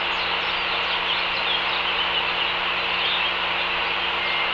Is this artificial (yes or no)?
no